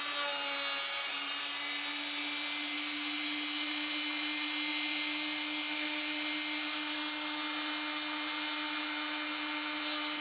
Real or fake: real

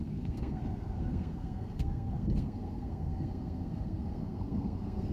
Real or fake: fake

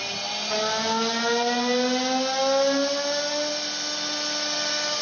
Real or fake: real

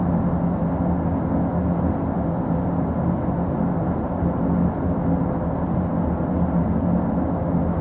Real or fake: real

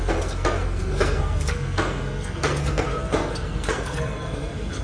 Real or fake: fake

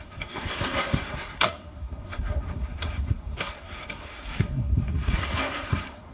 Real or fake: fake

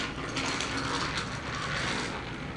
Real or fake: real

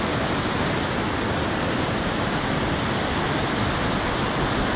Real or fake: real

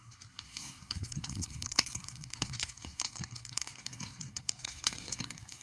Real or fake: fake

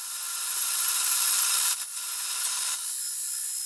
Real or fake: real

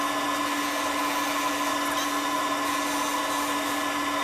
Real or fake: real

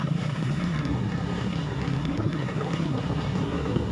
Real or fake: fake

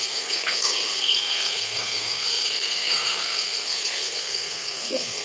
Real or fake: fake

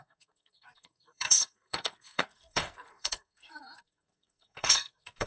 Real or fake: fake